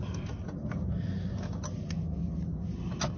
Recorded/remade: recorded